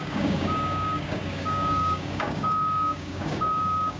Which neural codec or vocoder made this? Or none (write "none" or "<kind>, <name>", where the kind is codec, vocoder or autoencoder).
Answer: codec, DAC